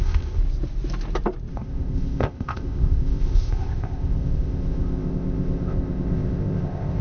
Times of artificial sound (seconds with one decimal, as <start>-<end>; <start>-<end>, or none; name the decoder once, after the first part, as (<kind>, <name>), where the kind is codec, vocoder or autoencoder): 0.0-0.4 (codec, ZipCodec); 1.5-7.0